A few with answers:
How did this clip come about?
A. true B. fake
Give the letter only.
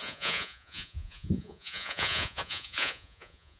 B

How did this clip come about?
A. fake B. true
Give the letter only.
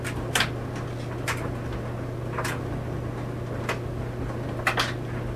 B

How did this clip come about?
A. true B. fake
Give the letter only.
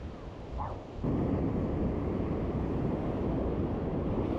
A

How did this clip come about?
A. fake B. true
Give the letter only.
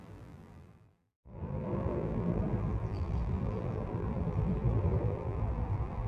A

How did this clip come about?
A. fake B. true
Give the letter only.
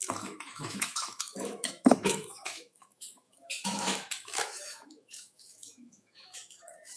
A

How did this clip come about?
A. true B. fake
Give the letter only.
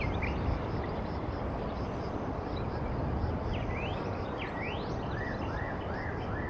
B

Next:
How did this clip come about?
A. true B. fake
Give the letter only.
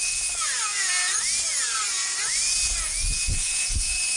B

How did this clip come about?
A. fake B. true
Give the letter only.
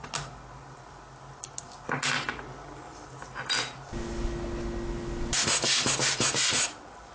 B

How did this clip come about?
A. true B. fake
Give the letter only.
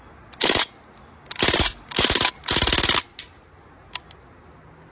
A